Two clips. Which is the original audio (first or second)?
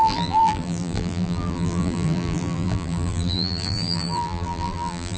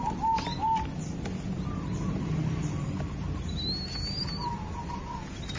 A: second